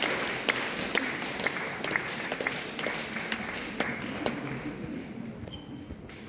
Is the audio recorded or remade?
recorded